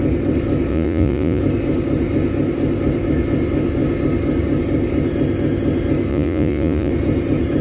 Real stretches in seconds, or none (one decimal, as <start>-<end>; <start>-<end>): 0.0-0.7; 1.4-6.1; 6.9-7.6